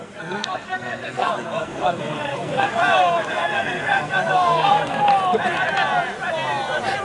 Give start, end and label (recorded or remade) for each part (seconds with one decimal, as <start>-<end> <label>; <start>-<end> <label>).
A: 0.0-2.8 remade; 2.8-3.3 recorded; 3.3-5.1 remade; 5.1-7.0 recorded